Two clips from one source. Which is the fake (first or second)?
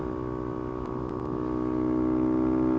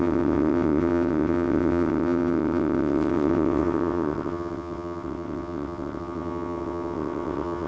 second